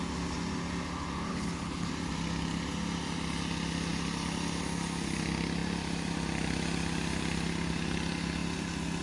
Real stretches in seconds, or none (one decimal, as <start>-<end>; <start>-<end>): 0.0-1.3; 1.9-9.0